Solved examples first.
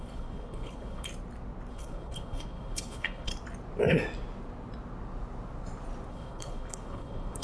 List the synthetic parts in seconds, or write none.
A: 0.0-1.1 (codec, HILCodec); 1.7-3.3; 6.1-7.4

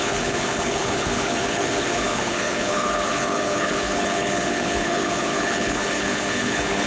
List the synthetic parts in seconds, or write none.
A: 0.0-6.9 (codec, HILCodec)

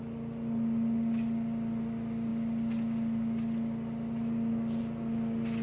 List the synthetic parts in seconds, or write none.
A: none